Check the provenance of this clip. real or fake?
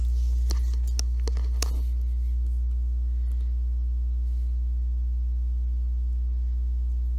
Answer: real